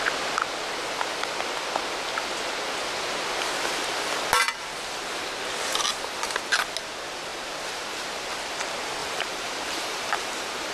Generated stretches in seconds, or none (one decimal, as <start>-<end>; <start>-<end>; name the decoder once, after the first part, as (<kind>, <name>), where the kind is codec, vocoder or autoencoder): 7.3-8.3 (vocoder, BigVGAN v2); 9.0-10.7